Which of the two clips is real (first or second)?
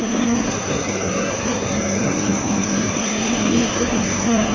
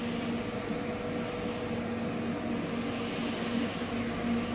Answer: second